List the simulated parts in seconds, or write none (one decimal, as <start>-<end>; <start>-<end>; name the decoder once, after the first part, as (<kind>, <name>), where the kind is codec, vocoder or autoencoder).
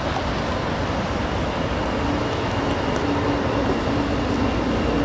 2.2-2.7 (autoencoder, DAC-VAE)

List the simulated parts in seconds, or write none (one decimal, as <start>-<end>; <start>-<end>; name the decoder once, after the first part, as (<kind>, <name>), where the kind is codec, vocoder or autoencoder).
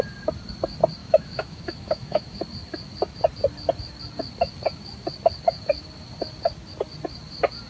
1.0-2.4 (autoencoder, DAC-VAE)